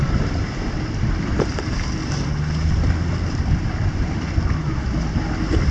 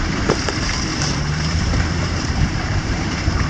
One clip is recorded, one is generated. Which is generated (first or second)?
second